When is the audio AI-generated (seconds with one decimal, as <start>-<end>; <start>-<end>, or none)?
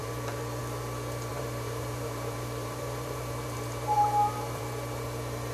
0.0-0.6; 1.3-4.6